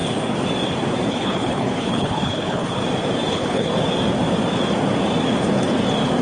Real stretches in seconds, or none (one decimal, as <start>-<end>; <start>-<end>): 0.0-1.1; 2.8-3.3; 3.7-6.2